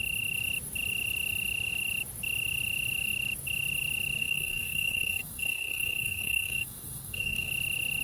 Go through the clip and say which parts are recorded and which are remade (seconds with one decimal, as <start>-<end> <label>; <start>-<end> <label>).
0.0-4.2 recorded; 4.2-7.5 remade; 7.5-8.0 recorded